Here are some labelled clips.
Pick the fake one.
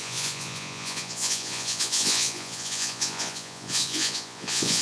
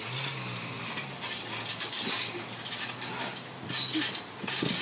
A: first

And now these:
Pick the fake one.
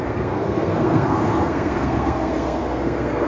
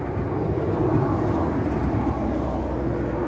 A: first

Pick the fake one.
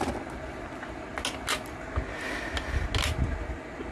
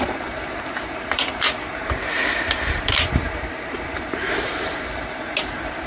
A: second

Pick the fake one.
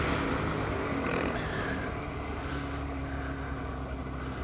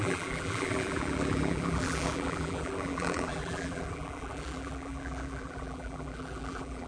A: second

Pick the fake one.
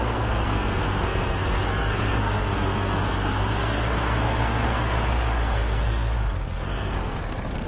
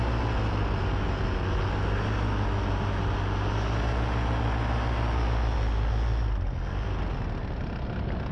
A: first